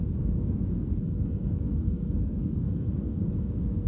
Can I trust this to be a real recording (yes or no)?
no